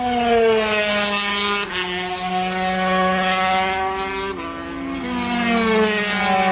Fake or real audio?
real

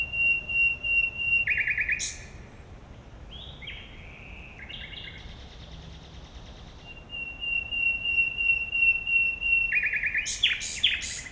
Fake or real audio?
real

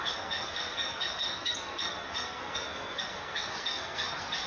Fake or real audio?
fake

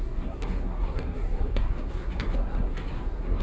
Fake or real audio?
fake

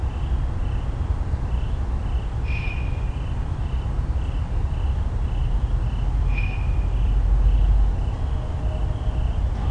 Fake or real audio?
real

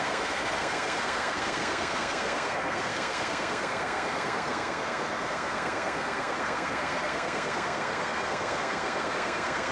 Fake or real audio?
fake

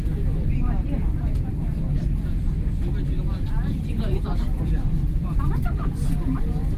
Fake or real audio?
real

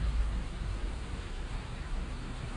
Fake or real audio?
fake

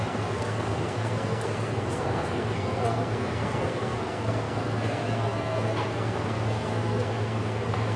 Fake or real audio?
fake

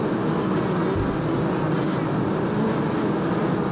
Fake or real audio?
real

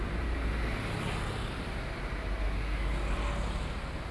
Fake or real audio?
real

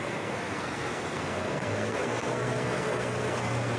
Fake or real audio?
fake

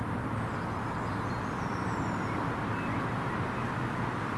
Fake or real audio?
real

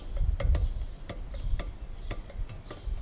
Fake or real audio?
real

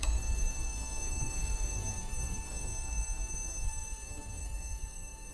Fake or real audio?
fake